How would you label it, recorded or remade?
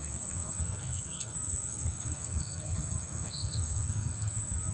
remade